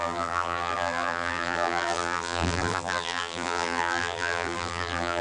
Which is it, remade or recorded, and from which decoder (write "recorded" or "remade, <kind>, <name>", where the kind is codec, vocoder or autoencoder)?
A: remade, vocoder, BigVGAN v2